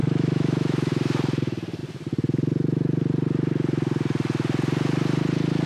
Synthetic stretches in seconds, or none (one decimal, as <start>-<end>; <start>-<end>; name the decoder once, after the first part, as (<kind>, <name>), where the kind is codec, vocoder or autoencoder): 0.0-0.9 (autoencoder, DAC-VAE)